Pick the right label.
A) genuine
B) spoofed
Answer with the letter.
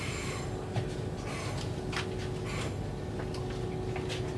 A